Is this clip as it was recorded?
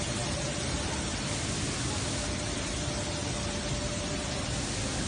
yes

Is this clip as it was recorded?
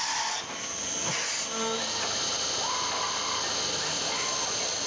yes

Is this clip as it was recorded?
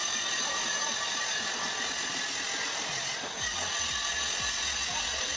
yes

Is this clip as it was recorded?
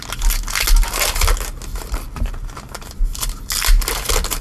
yes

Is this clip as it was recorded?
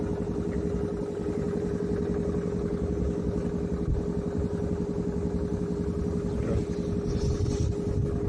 yes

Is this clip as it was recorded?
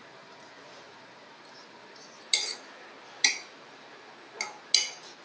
yes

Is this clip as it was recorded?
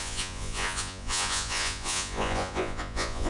no